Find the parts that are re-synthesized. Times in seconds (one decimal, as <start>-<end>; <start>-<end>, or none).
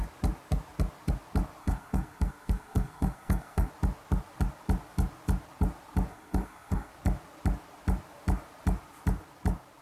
1.6-3.7; 6.1-6.9